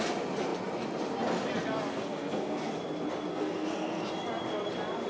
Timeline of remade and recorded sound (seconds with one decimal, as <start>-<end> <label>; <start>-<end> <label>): 0.0-1.9 recorded; 1.9-2.7 remade; 2.7-3.3 recorded; 3.3-4.0 remade; 4.0-5.1 recorded